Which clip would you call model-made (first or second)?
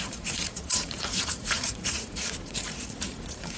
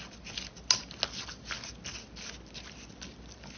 first